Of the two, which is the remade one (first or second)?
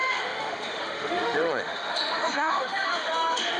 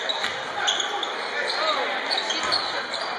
first